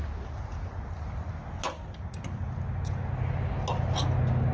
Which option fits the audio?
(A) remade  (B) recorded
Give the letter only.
B